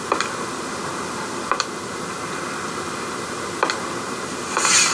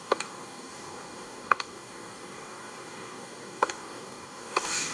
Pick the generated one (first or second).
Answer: second